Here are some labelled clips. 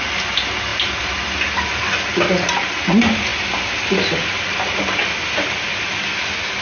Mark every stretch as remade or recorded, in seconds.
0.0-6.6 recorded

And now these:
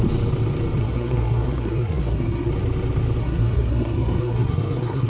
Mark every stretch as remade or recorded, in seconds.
0.0-0.8 recorded; 0.8-2.5 remade; 2.5-3.2 recorded; 3.2-5.1 remade

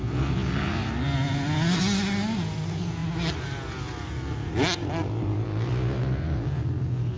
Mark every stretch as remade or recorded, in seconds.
0.0-7.2 recorded

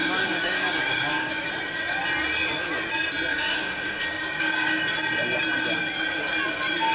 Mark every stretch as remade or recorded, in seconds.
0.0-1.5 remade; 1.5-3.3 recorded; 3.3-4.8 remade; 4.8-6.9 recorded

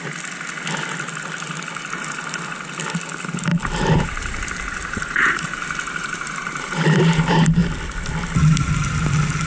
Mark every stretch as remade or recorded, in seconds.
0.0-3.5 recorded; 3.5-7.0 remade; 7.0-9.5 recorded